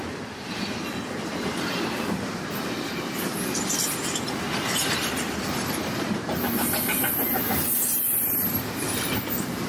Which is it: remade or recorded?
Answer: remade